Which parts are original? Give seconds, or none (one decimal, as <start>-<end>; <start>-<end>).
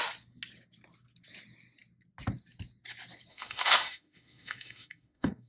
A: 0.0-3.3